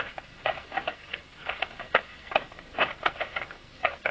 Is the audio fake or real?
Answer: fake